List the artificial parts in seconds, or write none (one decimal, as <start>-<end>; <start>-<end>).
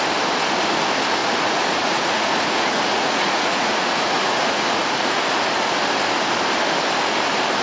1.2-5.2